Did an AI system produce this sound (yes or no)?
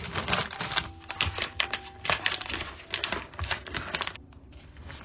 no